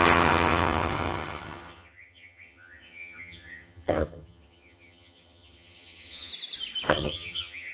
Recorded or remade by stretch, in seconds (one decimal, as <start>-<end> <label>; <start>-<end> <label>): 0.0-6.3 remade; 6.3-6.9 recorded; 6.9-7.7 remade